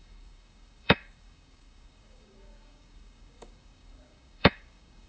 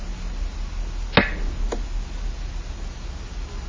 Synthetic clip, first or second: first